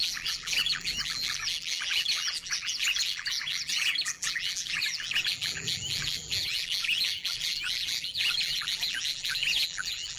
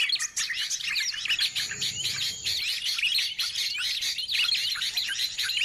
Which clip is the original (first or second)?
second